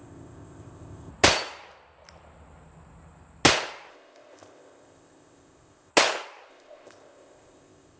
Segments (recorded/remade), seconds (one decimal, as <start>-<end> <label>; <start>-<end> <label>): 0.0-1.1 remade; 1.1-3.9 recorded; 3.9-5.9 remade; 5.9-6.5 recorded; 6.5-8.0 remade